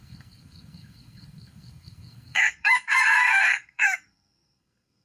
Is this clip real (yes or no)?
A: no